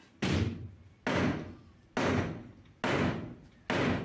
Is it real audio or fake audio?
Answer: real